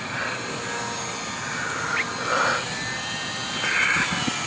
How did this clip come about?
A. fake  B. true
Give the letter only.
B